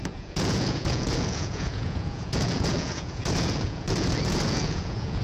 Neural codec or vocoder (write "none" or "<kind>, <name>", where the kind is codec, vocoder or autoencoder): vocoder, Vocos